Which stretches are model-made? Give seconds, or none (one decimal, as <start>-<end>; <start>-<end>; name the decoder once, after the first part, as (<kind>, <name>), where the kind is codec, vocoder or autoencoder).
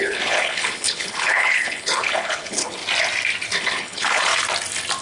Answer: 0.0-2.8 (codec, HILCodec); 3.6-4.3